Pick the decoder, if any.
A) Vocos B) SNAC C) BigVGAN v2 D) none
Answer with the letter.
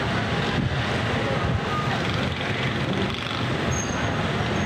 D